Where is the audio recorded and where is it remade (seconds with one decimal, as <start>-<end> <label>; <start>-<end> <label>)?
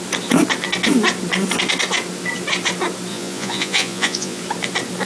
0.0-3.1 recorded; 3.1-4.4 remade; 4.4-5.1 recorded